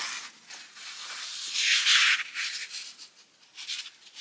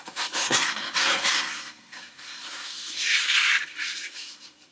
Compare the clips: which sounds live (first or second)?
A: first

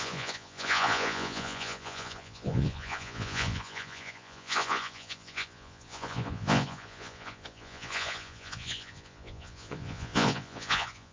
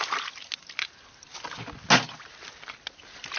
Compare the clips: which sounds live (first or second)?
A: second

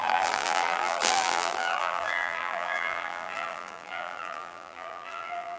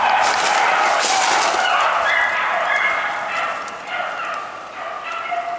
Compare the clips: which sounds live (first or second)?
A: second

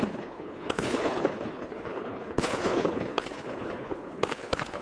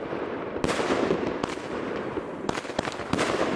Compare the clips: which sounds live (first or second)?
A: second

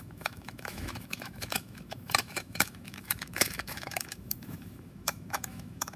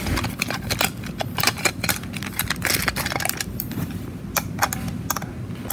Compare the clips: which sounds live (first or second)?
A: second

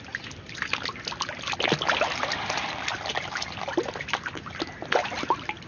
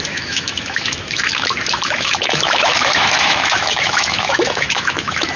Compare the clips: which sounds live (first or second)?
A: first